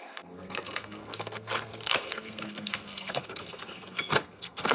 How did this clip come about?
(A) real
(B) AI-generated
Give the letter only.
B